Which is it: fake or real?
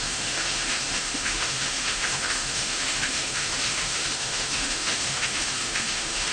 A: fake